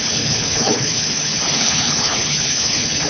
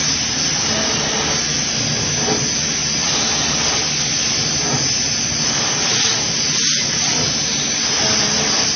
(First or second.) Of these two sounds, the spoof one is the first